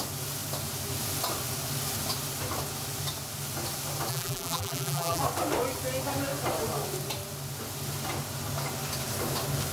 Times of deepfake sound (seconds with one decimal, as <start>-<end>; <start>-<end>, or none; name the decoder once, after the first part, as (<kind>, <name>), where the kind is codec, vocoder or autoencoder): 4.1-5.2 (vocoder, BigVGAN v2)